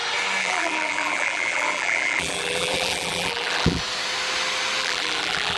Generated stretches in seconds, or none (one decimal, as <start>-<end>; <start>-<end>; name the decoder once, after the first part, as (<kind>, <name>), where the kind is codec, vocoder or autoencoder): 0.4-3.8 (vocoder, BigVGAN v2); 4.8-5.6